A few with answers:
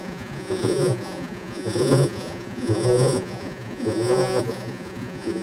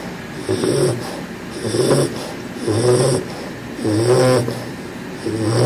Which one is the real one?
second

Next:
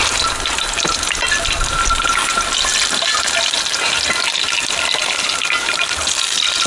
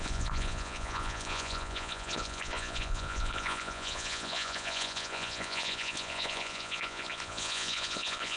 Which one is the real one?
first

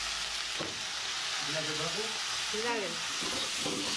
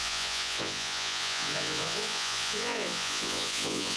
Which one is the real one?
first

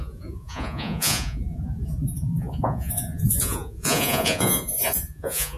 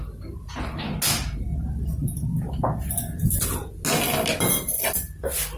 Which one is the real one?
second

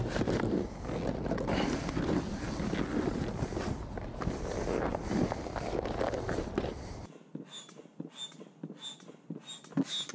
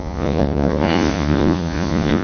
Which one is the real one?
first